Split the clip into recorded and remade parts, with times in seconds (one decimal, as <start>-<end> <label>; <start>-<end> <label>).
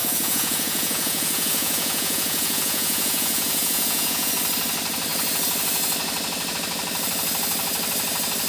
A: 0.0-4.3 remade; 4.3-8.5 recorded